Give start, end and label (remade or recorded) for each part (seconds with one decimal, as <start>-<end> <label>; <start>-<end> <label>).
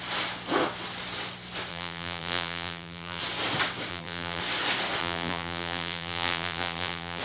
0.0-1.7 recorded; 1.7-3.2 remade; 3.2-3.9 recorded; 3.9-4.4 remade; 4.4-5.0 recorded; 5.0-7.2 remade